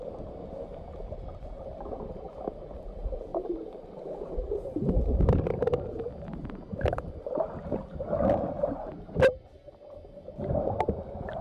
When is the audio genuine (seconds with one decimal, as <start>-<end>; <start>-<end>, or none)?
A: 0.0-3.3; 6.1-11.4